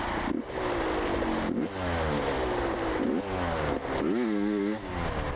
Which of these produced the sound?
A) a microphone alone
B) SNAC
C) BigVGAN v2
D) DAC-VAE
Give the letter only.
A